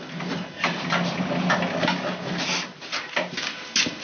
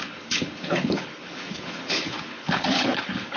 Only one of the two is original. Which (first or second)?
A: first